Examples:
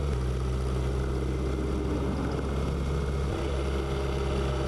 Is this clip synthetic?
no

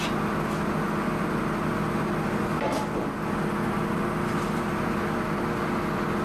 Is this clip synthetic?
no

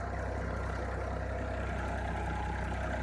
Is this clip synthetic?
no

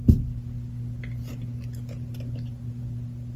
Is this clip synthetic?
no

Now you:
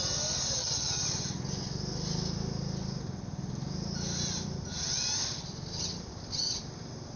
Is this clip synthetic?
no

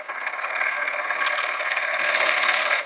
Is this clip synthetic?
yes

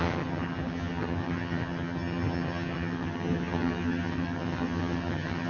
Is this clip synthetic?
yes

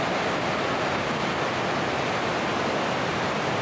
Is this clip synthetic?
no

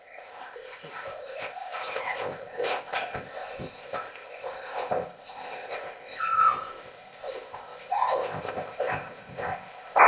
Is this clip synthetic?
yes